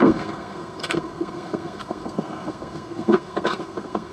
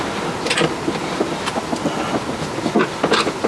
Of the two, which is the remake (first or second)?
first